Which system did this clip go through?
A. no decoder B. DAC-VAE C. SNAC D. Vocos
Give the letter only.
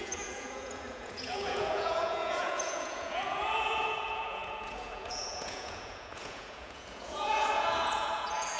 D